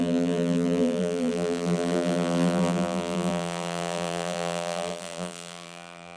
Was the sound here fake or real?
fake